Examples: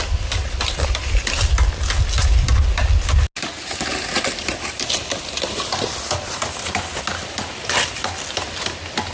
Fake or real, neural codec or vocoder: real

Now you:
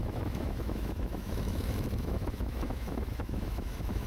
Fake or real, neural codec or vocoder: fake, autoencoder, DAC-VAE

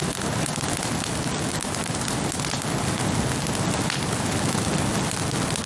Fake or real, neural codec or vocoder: real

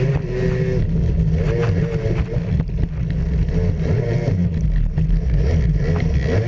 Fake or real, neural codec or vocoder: real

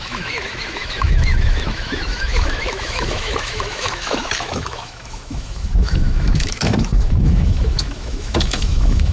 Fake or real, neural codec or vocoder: fake, autoencoder, DAC-VAE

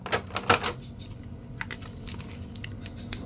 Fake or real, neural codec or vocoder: real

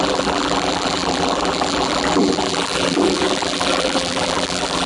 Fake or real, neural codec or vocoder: fake, vocoder, BigVGAN v2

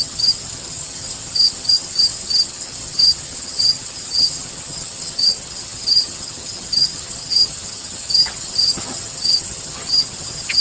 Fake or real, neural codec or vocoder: fake, vocoder, HiFi-GAN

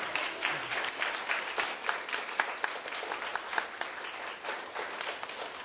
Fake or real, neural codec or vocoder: real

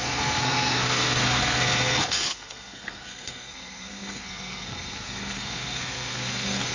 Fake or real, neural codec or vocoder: fake, codec, SNAC